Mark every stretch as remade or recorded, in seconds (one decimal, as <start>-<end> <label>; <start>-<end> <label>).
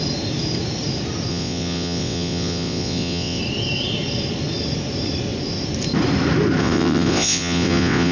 0.0-1.3 recorded; 1.3-3.4 remade; 3.4-6.6 recorded; 6.6-8.1 remade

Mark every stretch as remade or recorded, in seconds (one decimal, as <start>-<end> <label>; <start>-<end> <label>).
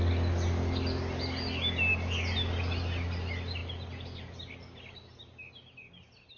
0.0-6.4 recorded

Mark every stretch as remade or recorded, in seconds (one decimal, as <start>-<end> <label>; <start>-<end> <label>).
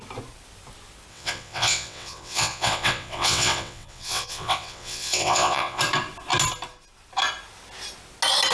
0.0-1.1 recorded; 1.1-5.8 remade; 5.8-8.5 recorded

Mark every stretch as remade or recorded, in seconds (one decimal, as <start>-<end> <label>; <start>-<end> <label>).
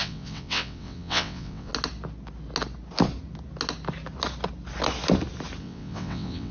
0.0-1.7 remade; 1.7-5.6 recorded; 5.6-6.5 remade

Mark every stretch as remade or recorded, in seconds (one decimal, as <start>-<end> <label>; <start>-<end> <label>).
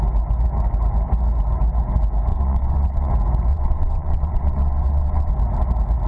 0.0-2.3 recorded; 2.3-3.1 remade; 3.1-3.5 recorded; 3.5-5.3 remade; 5.3-6.1 recorded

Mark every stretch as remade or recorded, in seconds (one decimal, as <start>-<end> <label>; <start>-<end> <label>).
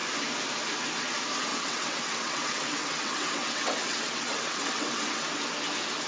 0.0-1.5 recorded; 1.5-5.2 remade; 5.2-6.1 recorded